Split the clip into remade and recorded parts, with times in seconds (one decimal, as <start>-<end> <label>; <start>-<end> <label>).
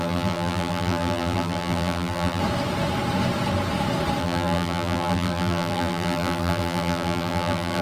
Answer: 0.0-2.4 remade; 2.4-4.2 recorded; 4.2-7.8 remade